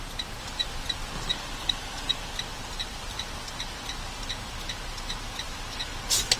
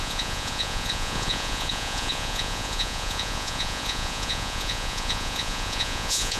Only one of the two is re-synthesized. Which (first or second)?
second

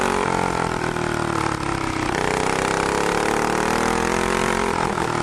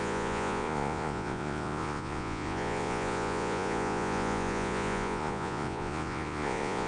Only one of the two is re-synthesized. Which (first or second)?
second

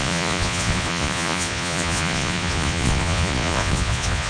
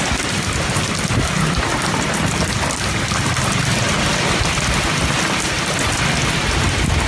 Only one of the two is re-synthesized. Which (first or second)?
first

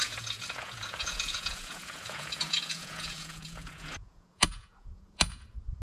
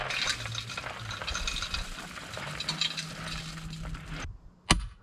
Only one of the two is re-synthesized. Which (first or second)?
first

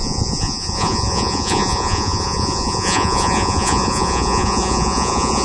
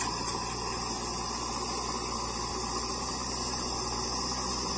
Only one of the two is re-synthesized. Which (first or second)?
first